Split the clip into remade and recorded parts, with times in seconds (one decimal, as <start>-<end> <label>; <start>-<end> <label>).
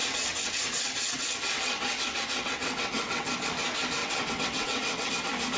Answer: 0.0-3.3 remade; 3.3-4.0 recorded; 4.0-5.1 remade; 5.1-5.6 recorded